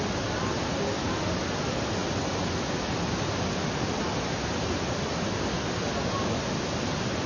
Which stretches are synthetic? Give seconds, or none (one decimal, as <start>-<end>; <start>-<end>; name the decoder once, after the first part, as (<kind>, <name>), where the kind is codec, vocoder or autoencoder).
none